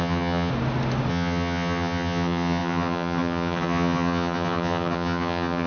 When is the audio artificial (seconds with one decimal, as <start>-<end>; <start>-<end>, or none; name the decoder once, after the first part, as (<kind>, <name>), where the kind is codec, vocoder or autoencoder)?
0.0-0.5 (vocoder, HiFi-GAN); 1.1-5.7